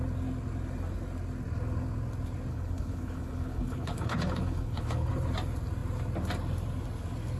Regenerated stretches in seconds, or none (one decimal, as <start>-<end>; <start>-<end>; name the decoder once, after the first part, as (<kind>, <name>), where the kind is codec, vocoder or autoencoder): 2.5-5.1 (codec, HILCodec)